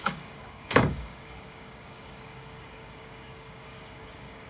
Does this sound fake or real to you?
fake